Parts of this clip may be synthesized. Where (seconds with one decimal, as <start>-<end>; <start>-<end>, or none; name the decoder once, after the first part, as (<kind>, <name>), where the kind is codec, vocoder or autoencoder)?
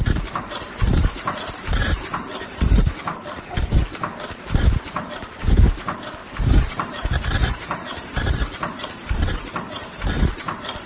0.0-6.2 (vocoder, BigVGAN v2); 6.7-10.9